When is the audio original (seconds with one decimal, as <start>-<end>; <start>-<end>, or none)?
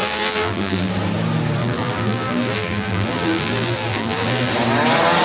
0.9-1.6; 4.5-5.2